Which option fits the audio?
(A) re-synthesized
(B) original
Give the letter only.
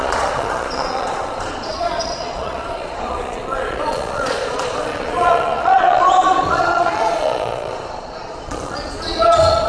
A